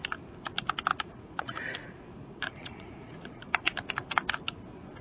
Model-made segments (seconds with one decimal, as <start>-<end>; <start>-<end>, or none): 0.9-3.7